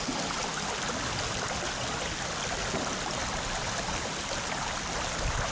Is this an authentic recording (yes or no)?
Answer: yes